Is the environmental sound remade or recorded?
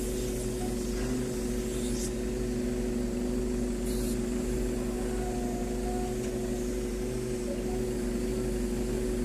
recorded